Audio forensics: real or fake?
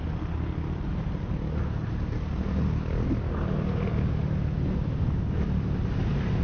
real